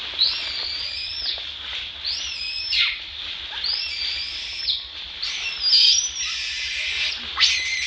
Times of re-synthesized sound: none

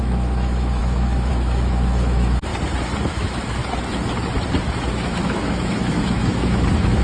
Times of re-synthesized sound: 0.0-2.5 (autoencoder, DAC-VAE); 3.0-3.6; 4.9-7.0

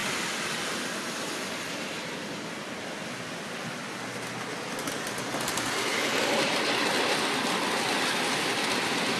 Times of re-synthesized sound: none

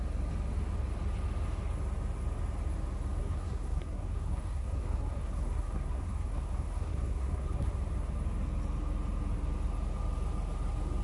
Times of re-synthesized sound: 3.2-7.7 (codec, SNAC)

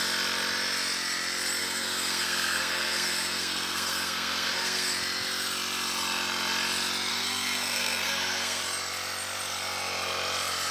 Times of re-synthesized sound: 1.6-4.9 (codec, SNAC); 7.1-8.6

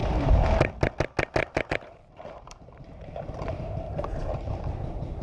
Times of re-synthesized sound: 1.4-4.5 (vocoder, BigVGAN v2)

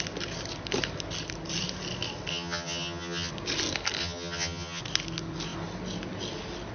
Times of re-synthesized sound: 2.3-3.3 (vocoder, HiFi-GAN); 4.0-4.8

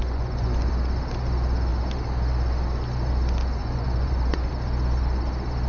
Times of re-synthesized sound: 0.0-0.7 (vocoder, Vocos); 3.6-4.5